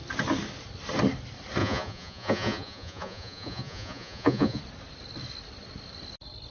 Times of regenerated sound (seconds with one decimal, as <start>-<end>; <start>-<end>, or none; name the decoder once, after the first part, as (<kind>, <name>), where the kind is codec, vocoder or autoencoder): 1.6-4.6 (vocoder, Vocos)